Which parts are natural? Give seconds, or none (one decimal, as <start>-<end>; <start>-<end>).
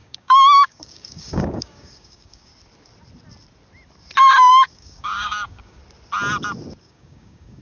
2.5-4.5; 5.8-6.8